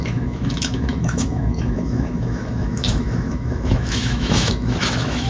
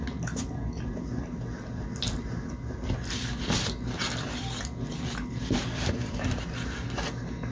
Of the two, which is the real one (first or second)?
second